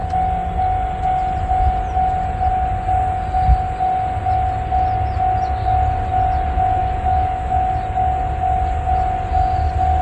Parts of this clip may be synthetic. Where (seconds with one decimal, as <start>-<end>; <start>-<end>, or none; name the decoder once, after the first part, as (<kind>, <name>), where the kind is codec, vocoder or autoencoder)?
6.8-7.7 (autoencoder, DAC-VAE)